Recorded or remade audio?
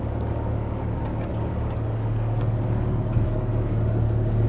remade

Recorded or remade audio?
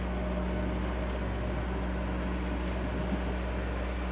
recorded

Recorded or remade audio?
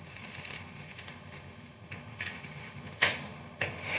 remade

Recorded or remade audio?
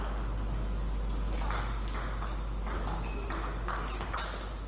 recorded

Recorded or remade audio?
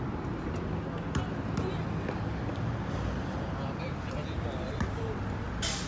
recorded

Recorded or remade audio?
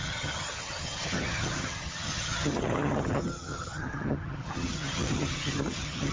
remade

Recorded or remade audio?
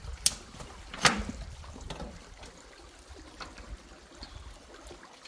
recorded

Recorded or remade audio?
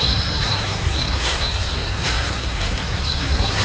remade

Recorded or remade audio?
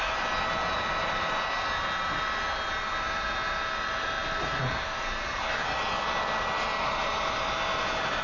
recorded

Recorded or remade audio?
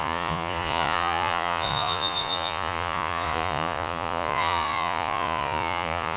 remade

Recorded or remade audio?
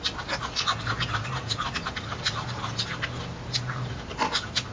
recorded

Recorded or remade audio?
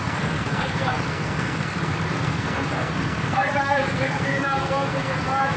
remade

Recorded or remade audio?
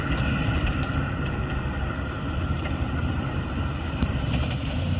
remade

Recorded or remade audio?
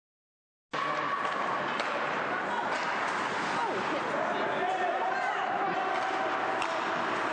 recorded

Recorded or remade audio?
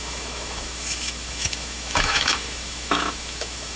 remade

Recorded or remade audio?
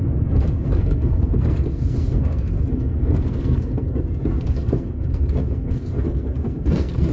remade